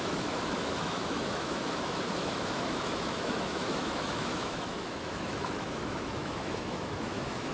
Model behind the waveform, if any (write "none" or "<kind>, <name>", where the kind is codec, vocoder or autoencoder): autoencoder, DAC-VAE